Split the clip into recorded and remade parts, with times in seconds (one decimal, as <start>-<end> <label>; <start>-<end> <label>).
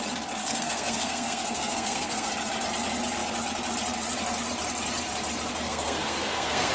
0.0-0.4 recorded; 0.4-2.3 remade; 2.3-5.5 recorded; 5.5-6.7 remade